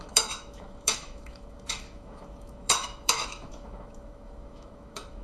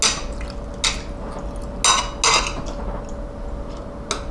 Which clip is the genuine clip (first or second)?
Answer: second